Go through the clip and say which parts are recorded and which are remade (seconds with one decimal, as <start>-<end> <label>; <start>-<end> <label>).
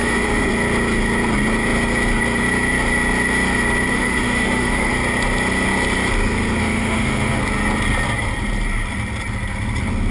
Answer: 0.0-0.5 remade; 0.5-3.9 recorded; 3.9-4.9 remade; 4.9-6.6 recorded; 6.6-7.4 remade; 7.4-10.1 recorded